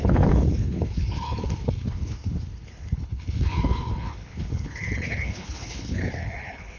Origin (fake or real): fake